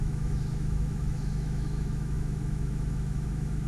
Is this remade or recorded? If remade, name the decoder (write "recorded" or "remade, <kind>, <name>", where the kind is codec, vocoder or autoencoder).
remade, autoencoder, DAC-VAE